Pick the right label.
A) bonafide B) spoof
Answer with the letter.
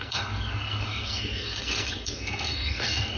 B